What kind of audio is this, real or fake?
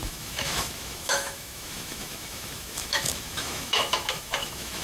fake